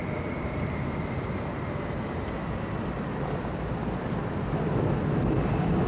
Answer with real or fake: real